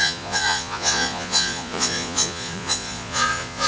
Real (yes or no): no